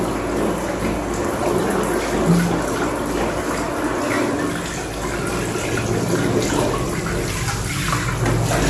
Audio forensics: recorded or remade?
recorded